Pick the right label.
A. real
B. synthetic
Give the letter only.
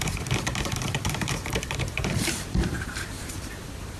B